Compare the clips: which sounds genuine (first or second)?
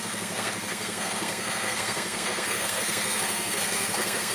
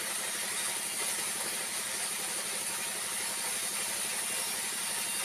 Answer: second